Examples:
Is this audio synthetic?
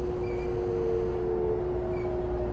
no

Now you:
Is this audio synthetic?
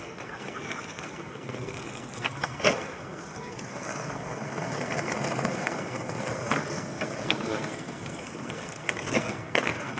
yes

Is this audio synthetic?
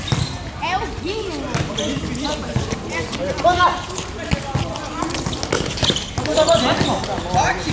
no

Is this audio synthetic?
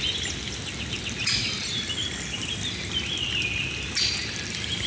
no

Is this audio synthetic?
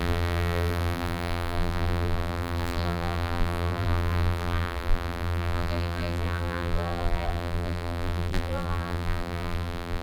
yes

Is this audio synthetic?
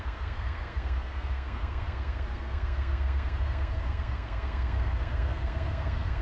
yes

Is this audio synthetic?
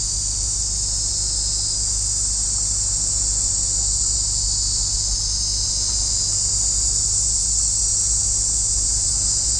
no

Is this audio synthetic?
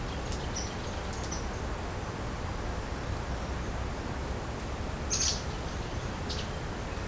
no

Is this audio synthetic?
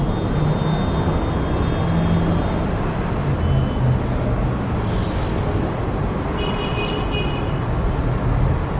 no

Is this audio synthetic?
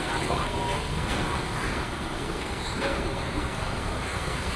yes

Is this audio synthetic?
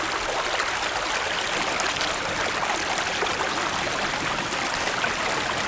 no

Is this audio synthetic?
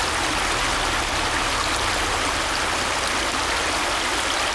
no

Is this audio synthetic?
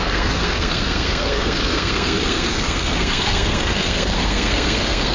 yes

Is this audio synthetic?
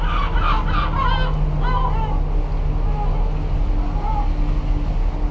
no